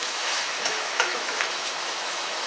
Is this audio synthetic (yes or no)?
yes